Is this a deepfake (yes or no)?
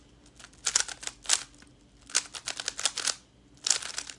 no